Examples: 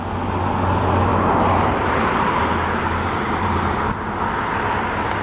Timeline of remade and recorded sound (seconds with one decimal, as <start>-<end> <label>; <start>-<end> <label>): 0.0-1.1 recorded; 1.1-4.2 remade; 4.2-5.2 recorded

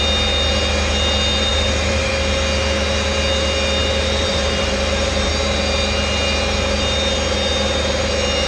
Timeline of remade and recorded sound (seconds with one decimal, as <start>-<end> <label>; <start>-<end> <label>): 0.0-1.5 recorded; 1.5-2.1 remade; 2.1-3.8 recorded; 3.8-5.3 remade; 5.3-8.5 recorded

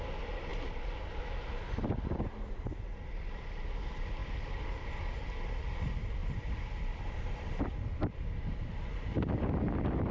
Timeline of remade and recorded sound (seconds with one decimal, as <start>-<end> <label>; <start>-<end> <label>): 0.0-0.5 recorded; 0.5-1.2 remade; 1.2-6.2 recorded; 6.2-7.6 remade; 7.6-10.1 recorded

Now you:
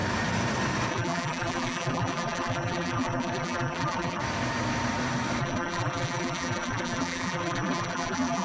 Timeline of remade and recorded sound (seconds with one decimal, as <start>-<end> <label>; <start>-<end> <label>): 0.0-0.9 recorded; 0.9-4.2 remade; 4.2-5.4 recorded; 5.4-8.4 remade

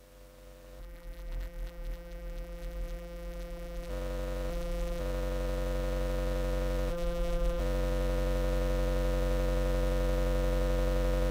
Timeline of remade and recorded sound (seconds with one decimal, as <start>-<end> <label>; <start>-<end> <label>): 0.0-0.8 recorded; 0.8-3.9 remade; 3.9-4.5 recorded; 4.5-5.0 remade; 5.0-6.9 recorded; 6.9-7.6 remade; 7.6-11.3 recorded